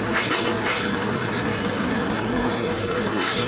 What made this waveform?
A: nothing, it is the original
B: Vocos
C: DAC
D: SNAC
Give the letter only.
D